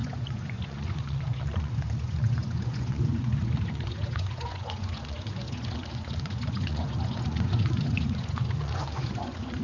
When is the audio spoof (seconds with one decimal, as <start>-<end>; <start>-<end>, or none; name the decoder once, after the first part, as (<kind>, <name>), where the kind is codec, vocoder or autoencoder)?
0.0-9.6 (vocoder, Vocos)